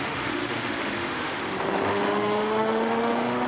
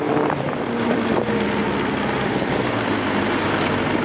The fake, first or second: first